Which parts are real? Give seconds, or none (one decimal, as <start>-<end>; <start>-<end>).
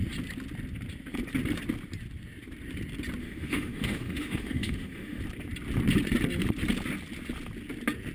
0.0-3.2; 5.2-8.1